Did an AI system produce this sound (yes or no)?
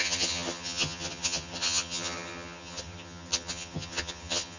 yes